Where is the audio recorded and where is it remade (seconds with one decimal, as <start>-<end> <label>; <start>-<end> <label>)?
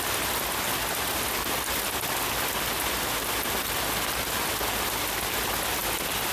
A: 0.0-6.3 recorded